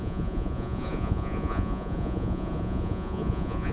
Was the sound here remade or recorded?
remade